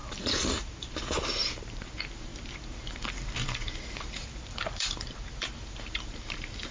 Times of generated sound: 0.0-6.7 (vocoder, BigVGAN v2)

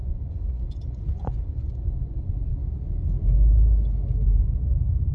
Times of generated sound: 0.0-2.5 (vocoder, Vocos)